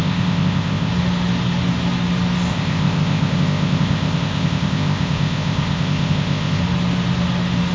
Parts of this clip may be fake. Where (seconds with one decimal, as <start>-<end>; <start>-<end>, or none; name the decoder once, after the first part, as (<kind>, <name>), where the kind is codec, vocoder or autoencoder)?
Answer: 0.0-0.9 (codec, ZipCodec); 2.5-6.6